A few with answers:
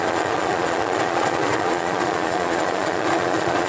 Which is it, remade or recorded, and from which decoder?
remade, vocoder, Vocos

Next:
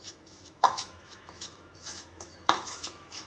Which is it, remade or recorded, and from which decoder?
remade, autoencoder, DAC-VAE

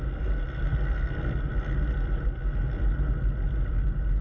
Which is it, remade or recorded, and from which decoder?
recorded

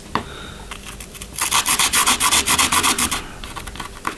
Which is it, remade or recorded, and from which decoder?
remade, vocoder, BigVGAN v2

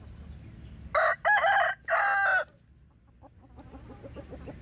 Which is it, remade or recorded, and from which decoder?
recorded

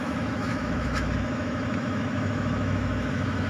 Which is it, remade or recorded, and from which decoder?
remade, autoencoder, DAC-VAE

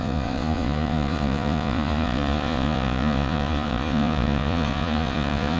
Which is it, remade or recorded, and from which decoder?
remade, vocoder, Vocos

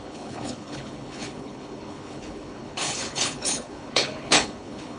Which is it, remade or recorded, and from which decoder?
remade, codec, HILCodec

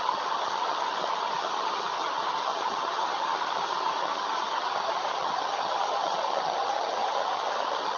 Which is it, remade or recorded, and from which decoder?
remade, vocoder, HiFi-GAN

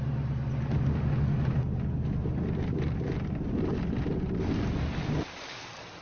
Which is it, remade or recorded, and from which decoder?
recorded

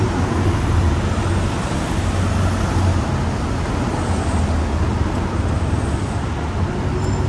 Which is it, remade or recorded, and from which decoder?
recorded